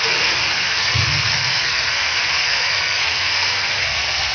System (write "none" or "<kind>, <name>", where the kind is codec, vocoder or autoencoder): codec, SNAC